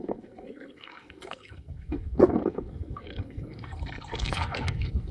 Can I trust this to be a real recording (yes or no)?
no